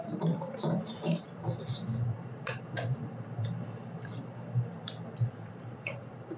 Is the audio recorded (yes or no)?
no